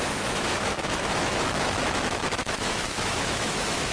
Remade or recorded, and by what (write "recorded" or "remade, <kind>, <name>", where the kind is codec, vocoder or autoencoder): remade, autoencoder, DAC-VAE